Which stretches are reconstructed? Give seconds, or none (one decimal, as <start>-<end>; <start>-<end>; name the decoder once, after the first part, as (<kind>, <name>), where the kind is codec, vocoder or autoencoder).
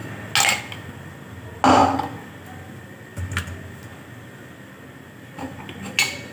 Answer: none